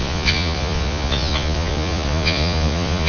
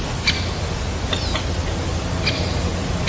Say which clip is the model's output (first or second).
first